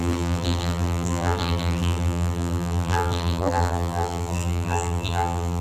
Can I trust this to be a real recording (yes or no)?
no